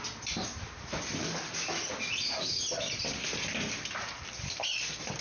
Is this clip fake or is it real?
real